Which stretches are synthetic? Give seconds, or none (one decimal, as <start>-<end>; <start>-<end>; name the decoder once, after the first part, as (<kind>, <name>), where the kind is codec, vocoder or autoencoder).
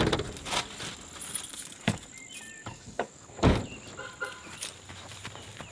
1.5-2.1 (codec, DAC); 2.6-3.6